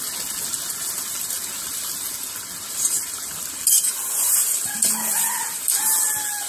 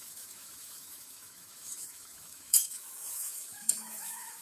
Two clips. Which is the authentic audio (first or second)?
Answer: first